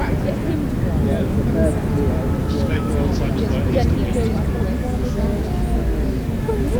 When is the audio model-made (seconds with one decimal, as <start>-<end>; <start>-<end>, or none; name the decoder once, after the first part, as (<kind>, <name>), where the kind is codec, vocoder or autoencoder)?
2.4-2.9 (codec, DAC); 4.8-5.4